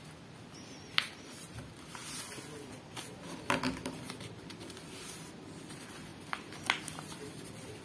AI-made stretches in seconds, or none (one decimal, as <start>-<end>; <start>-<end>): none